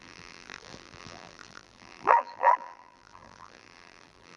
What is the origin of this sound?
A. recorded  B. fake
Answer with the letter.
B